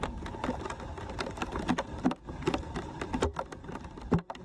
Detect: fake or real real